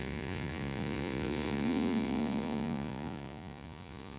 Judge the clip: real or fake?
fake